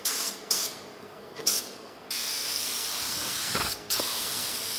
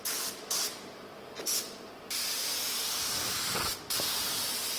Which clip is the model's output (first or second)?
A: first